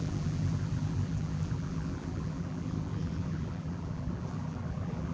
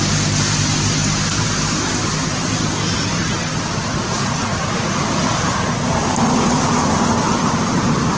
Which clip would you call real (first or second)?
second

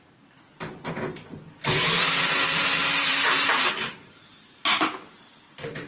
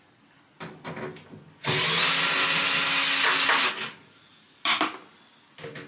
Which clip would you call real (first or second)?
second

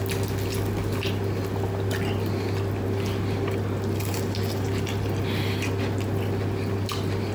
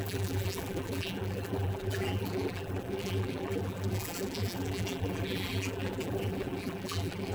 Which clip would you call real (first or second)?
first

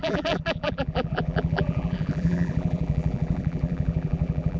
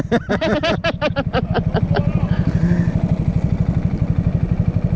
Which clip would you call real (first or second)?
second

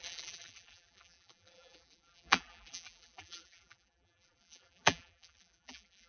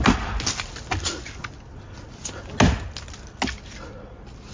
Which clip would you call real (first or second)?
second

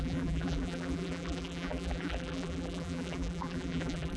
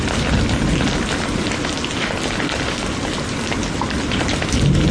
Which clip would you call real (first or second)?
second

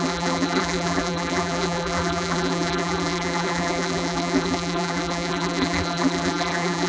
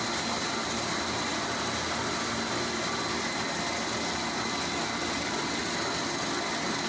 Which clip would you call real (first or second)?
second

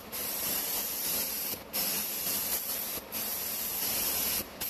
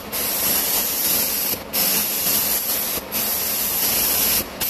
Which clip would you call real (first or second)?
second